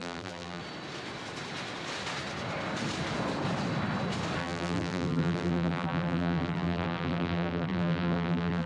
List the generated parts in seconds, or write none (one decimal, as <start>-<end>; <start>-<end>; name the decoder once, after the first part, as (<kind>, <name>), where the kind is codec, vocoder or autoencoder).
0.0-0.6 (vocoder, BigVGAN v2); 4.4-8.7